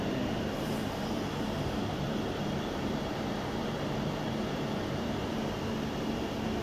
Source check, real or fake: fake